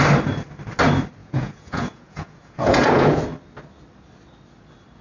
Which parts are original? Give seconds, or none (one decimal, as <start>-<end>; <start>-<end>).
0.0-1.2; 3.2-5.0